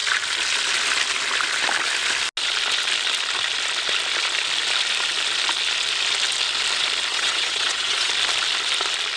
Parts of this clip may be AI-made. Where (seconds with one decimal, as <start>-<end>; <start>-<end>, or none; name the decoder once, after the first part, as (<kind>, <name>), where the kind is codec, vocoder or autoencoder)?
7.1-8.1 (vocoder, WaveNeXt)